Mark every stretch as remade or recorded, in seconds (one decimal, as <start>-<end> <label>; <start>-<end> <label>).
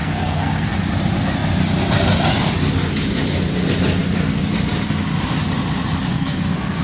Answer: 0.0-0.8 remade; 0.8-6.1 recorded; 6.1-6.8 remade